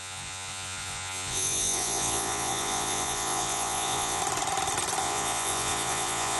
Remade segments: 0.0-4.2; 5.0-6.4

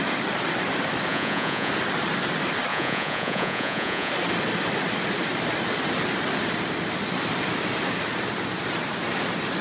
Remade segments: 1.1-1.7; 2.7-4.1

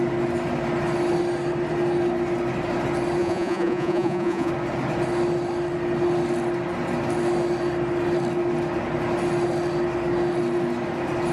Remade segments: 3.2-4.5

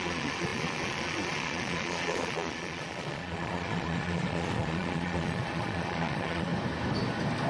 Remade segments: 0.0-6.5